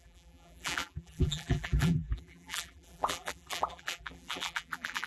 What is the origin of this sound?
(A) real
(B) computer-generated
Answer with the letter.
B